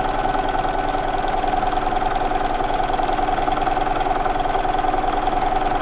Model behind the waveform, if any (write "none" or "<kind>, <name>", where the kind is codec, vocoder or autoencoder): none